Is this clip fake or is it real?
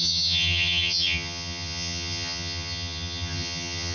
fake